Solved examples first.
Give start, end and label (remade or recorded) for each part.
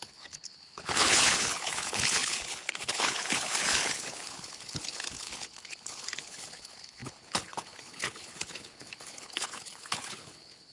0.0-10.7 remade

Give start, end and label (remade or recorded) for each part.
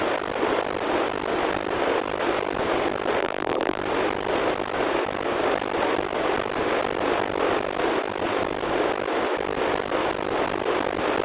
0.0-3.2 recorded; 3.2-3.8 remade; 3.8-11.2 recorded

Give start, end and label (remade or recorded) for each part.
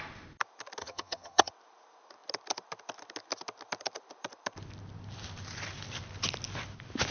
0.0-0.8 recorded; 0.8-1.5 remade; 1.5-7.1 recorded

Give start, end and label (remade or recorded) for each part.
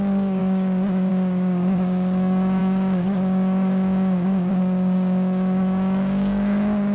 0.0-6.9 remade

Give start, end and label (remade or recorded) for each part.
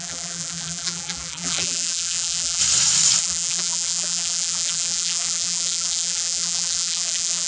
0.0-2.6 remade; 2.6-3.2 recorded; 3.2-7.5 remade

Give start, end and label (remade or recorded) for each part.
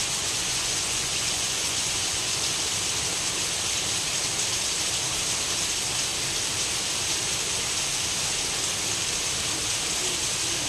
0.0-2.6 remade; 2.6-10.7 recorded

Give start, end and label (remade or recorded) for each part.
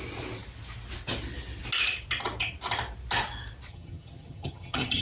0.0-3.7 recorded; 3.7-5.0 remade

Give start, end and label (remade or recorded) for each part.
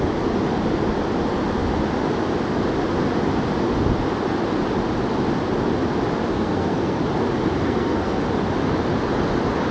0.0-6.3 recorded; 6.3-7.0 remade; 7.0-7.6 recorded; 7.6-8.2 remade; 8.2-9.7 recorded